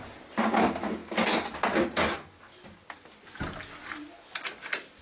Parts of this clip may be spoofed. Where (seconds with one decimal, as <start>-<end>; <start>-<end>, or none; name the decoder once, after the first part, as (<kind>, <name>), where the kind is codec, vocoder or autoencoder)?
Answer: none